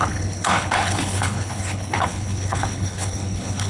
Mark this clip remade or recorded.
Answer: remade